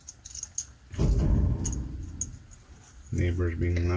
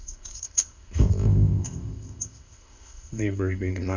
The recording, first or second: first